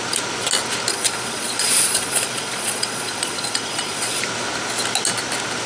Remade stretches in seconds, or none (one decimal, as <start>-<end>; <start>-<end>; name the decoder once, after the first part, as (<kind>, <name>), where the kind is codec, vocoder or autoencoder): 0.9-4.2 (vocoder, Vocos)